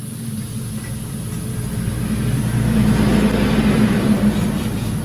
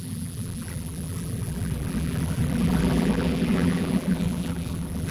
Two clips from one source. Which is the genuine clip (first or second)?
first